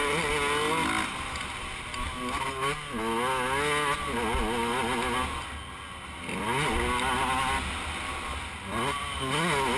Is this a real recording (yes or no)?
yes